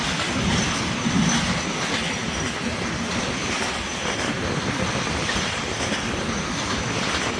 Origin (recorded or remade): recorded